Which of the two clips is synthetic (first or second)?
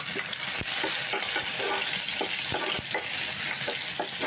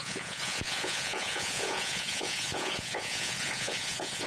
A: second